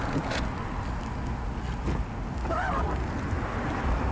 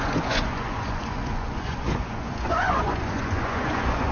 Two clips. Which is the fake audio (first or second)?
second